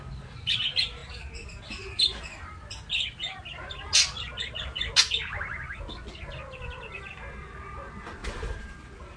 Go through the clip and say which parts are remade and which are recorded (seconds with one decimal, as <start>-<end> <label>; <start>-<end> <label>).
0.0-8.2 recorded; 8.2-9.2 remade